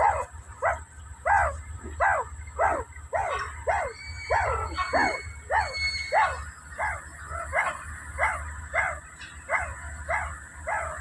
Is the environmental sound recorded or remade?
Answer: recorded